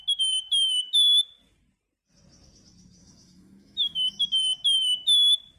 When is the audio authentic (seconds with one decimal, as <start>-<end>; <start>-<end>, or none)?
0.0-3.0; 4.2-5.6